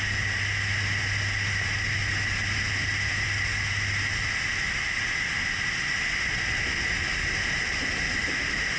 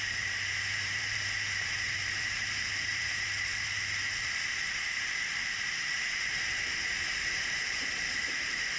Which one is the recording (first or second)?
first